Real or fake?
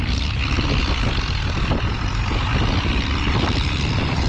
fake